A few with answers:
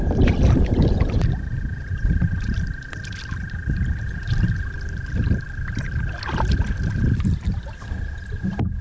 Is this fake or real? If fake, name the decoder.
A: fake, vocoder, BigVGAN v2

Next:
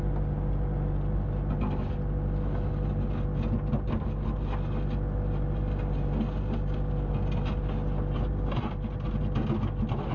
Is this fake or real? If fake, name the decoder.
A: real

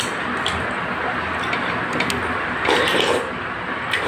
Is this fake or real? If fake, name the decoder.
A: real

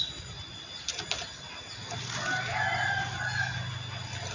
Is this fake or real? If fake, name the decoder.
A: real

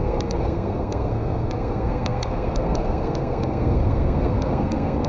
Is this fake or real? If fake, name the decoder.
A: fake, codec, SNAC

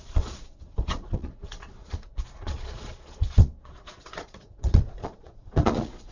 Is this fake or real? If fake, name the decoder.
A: fake, vocoder, Vocos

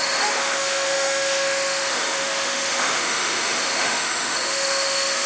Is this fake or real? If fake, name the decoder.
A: fake, autoencoder, DAC-VAE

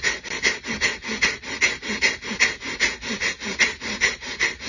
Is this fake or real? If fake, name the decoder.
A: real